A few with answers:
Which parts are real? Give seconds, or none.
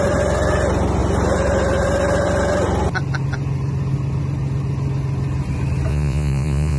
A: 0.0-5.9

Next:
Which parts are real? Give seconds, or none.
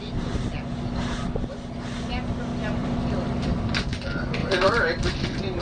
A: 0.0-2.8; 3.8-4.4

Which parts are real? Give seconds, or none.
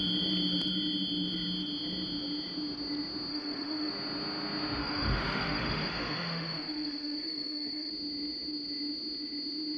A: 0.0-3.3; 3.9-4.8; 7.9-9.8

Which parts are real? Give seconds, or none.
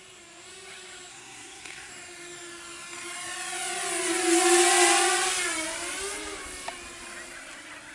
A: 0.0-1.1; 1.9-7.9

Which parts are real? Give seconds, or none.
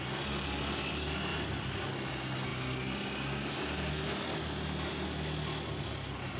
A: 0.0-6.4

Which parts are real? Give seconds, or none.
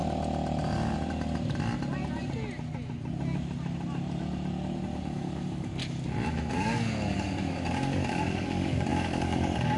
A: 0.0-5.0; 5.8-6.5